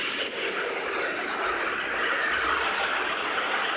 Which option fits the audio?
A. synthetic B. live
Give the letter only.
B